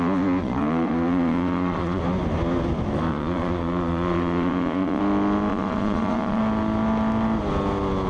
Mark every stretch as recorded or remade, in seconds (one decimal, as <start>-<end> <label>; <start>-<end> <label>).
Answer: 0.0-0.4 recorded; 0.4-2.0 remade; 2.0-3.1 recorded; 3.1-5.0 remade; 5.0-5.5 recorded; 5.5-6.4 remade; 6.4-8.1 recorded

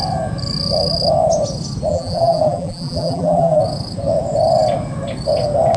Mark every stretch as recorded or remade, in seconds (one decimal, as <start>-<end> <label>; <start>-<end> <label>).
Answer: 0.0-1.9 recorded; 1.9-3.6 remade; 3.6-5.8 recorded

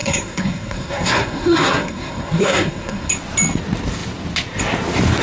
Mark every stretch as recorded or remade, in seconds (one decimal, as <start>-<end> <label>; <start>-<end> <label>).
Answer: 0.0-3.1 remade; 3.1-5.2 recorded

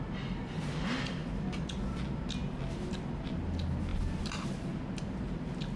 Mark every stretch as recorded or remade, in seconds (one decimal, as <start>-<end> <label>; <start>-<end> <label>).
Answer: 0.0-5.8 recorded